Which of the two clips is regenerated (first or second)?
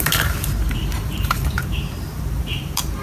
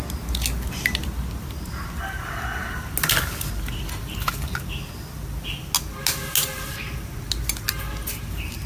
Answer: first